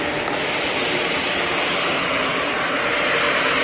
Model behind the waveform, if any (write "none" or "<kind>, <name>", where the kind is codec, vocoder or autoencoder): none